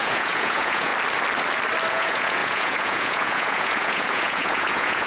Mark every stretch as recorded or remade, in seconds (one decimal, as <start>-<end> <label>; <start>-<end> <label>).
0.0-0.9 remade; 0.9-1.9 recorded; 1.9-5.1 remade